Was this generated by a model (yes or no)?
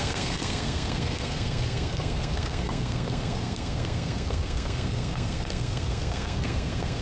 yes